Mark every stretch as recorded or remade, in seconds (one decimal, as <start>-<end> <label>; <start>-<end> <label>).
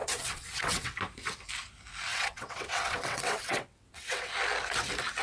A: 0.0-1.0 remade; 1.0-2.1 recorded; 2.1-4.3 remade; 4.3-5.2 recorded